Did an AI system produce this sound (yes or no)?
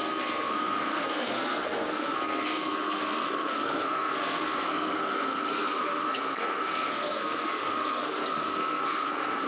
yes